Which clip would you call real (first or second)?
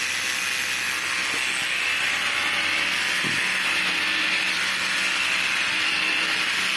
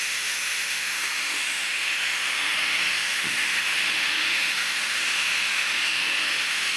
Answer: first